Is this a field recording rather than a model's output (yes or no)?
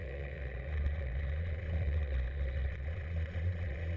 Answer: no